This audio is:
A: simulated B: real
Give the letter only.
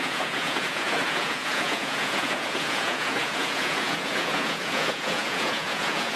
A